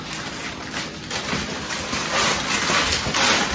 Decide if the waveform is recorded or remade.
recorded